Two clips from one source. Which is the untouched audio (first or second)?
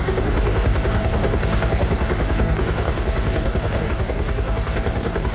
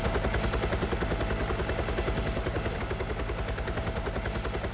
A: second